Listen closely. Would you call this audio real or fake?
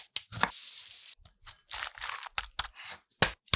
real